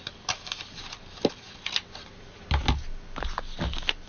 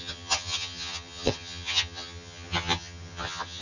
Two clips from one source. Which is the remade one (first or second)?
second